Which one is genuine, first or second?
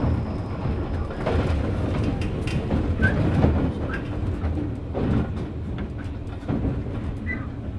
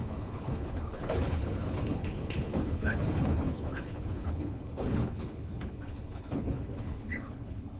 first